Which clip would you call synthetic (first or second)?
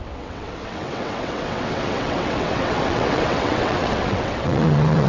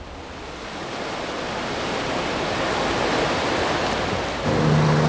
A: first